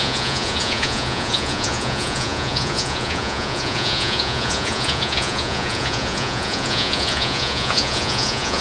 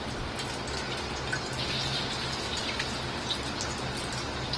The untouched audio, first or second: second